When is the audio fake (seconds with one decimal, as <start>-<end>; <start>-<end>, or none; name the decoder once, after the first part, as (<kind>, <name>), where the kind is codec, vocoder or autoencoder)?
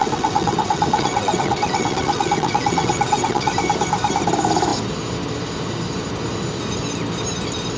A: 0.0-3.5 (vocoder, WaveNeXt)